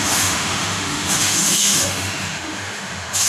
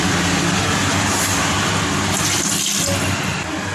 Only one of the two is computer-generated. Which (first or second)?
first